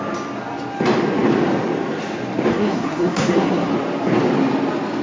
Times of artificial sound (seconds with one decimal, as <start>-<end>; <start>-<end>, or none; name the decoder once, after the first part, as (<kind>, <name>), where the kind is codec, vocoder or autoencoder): 2.5-3.7 (codec, SNAC)